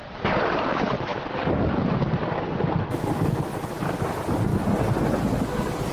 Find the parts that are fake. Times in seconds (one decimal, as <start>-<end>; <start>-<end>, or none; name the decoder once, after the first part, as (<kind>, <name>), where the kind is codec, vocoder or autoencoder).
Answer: 1.1-1.8 (vocoder, BigVGAN v2)